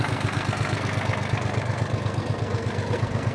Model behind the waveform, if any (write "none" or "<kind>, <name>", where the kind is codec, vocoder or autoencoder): codec, SNAC